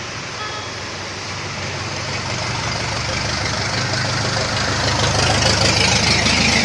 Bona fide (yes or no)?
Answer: yes